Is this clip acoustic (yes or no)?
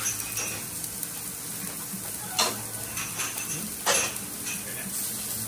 yes